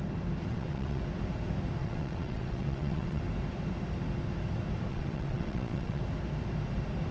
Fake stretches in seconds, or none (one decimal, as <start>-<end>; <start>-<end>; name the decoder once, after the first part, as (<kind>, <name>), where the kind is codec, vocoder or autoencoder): 0.5-1.0 (vocoder, WaveNeXt); 1.8-3.2; 4.9-6.0